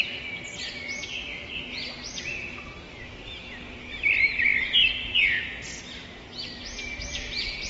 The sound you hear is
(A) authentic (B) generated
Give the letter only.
A